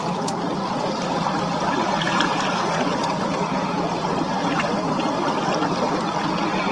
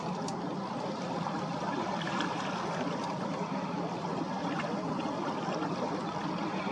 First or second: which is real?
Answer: first